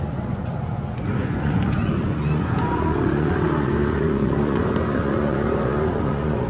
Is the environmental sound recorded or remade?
remade